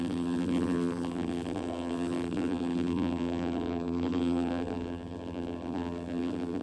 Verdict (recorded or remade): remade